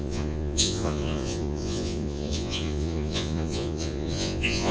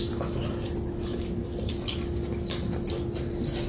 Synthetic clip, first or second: first